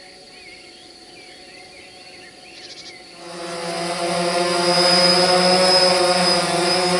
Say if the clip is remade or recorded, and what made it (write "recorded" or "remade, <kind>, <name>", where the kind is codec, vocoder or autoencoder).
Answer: recorded